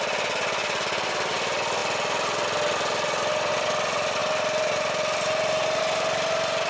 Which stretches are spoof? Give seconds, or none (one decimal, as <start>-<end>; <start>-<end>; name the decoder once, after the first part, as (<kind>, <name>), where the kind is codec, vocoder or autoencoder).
none